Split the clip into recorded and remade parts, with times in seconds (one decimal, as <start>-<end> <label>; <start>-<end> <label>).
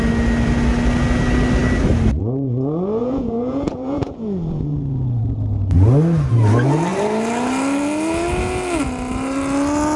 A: 0.0-3.0 recorded; 3.0-5.2 remade; 5.2-10.0 recorded